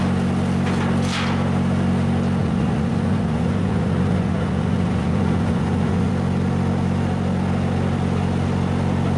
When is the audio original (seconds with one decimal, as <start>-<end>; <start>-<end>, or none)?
0.0-2.4; 6.1-9.2